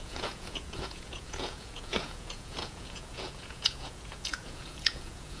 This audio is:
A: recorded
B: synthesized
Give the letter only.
B